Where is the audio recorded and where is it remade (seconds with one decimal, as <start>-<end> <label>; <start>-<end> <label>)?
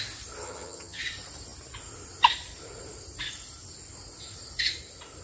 0.0-0.4 recorded; 0.4-1.0 remade; 1.0-5.2 recorded